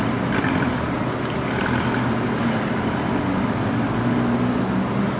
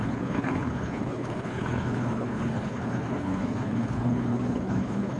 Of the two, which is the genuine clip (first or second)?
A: first